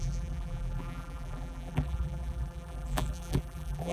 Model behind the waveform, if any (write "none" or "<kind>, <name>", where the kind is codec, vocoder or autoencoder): vocoder, BigVGAN v2